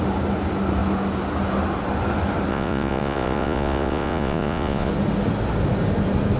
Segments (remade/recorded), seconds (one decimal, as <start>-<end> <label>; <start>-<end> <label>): 0.0-2.5 recorded; 2.5-4.9 remade; 4.9-6.4 recorded